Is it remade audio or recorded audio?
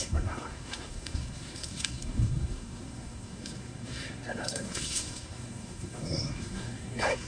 remade